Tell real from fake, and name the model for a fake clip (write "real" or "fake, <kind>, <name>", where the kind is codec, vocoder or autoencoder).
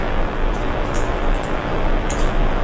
fake, vocoder, BigVGAN v2